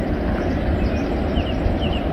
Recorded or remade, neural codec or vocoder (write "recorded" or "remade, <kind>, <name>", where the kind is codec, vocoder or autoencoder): recorded